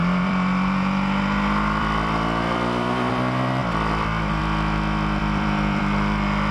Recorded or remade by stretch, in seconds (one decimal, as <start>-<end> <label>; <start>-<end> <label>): 0.0-3.1 remade; 3.1-3.6 recorded; 3.6-4.4 remade; 4.4-5.2 recorded; 5.2-5.8 remade; 5.8-6.5 recorded